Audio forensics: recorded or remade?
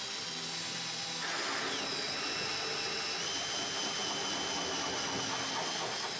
recorded